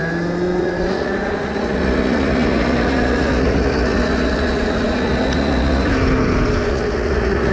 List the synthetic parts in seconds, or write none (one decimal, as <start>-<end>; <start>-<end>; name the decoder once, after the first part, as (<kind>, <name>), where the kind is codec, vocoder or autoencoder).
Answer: 0.6-5.9 (vocoder, Vocos); 6.7-7.5